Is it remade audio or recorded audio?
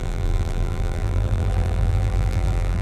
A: remade